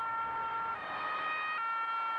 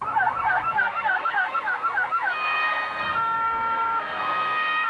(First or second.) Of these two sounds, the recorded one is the first